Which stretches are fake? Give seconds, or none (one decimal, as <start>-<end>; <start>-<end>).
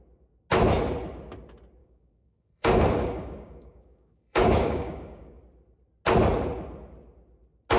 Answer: 1.8-5.4